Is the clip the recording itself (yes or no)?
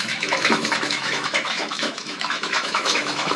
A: no